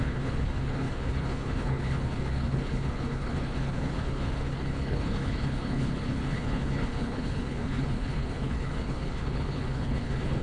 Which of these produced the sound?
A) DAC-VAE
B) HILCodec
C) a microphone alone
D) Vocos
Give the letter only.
B